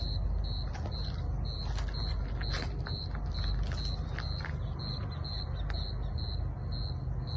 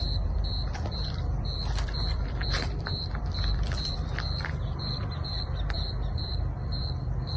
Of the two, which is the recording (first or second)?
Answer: first